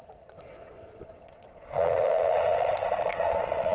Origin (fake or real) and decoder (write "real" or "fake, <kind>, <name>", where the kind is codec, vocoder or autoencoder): fake, vocoder, Vocos